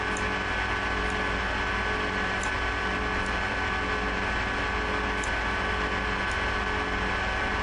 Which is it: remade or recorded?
recorded